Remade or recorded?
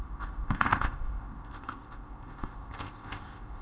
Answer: remade